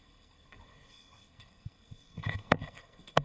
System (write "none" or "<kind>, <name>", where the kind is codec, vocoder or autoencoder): codec, SNAC